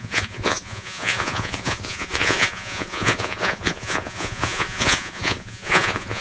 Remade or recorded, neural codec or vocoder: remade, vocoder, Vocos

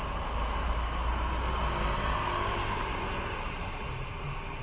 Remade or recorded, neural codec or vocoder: recorded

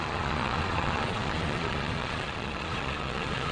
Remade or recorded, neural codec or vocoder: remade, vocoder, Vocos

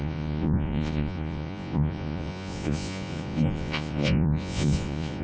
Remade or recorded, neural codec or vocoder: remade, vocoder, Vocos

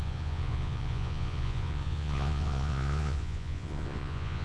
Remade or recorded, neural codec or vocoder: remade, vocoder, Vocos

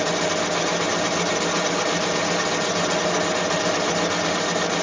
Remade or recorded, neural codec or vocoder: recorded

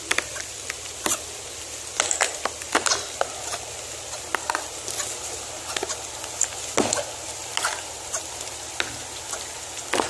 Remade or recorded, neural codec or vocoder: recorded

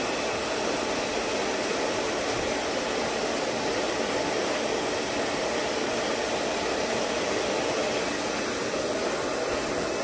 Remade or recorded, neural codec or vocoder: recorded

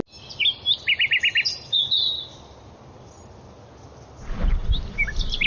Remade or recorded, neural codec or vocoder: recorded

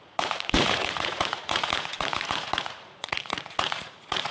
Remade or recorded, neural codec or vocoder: remade, vocoder, Vocos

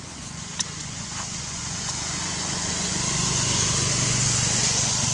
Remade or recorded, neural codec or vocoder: remade, vocoder, Vocos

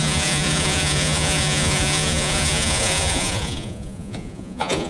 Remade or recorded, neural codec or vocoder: remade, vocoder, Vocos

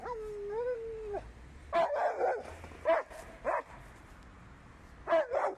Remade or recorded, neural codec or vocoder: recorded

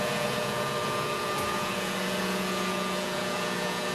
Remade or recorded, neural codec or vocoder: remade, vocoder, Vocos